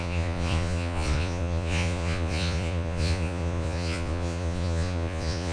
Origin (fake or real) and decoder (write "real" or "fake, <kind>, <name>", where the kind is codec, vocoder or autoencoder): fake, vocoder, Vocos